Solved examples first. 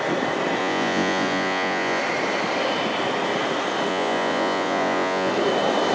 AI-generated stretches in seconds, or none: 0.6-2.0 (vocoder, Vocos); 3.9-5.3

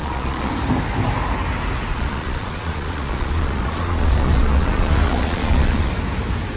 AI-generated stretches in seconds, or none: 0.0-0.5 (vocoder, Vocos); 1.9-5.9

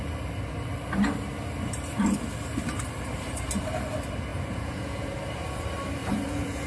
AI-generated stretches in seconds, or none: 4.3-5.1 (vocoder, Vocos); 6.0-6.7

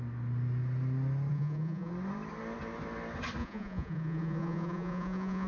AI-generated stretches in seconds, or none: 1.3-1.9 (vocoder, Vocos); 3.4-5.5